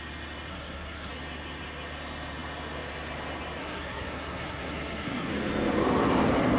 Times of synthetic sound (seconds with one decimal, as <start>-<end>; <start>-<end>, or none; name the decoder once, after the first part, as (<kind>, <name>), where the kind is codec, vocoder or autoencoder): 0.5-1.1 (codec, SNAC); 3.6-5.3